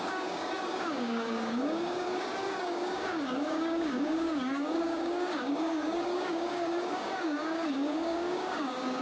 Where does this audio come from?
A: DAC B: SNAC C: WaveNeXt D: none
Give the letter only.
A